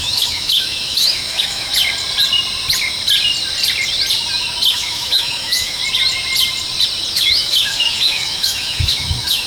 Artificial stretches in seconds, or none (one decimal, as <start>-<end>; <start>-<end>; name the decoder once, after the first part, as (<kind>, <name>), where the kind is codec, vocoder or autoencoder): 0.0-1.7 (autoencoder, DAC-VAE); 4.7-5.8; 7.1-9.5